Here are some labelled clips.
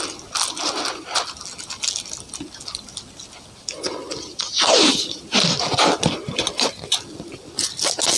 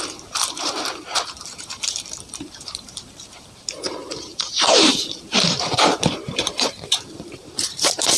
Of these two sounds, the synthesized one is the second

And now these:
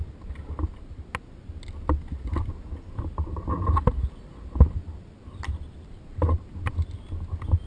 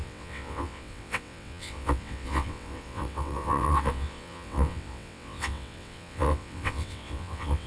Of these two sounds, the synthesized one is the second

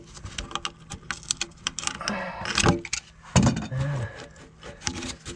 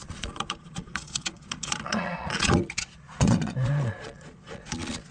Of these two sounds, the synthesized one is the second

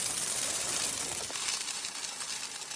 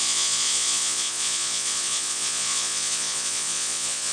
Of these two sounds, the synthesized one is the second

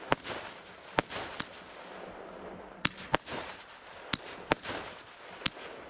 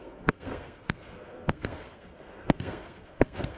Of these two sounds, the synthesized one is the second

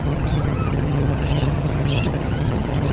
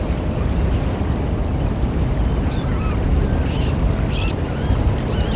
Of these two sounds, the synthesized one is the first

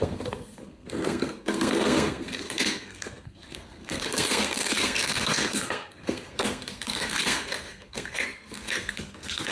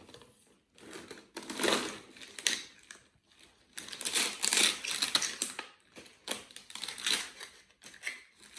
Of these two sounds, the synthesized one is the first